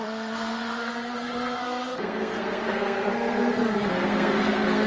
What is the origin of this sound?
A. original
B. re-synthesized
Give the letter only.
B